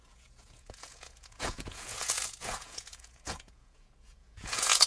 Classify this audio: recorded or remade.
remade